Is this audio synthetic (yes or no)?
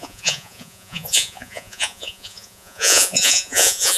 yes